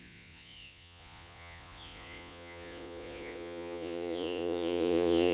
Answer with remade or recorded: remade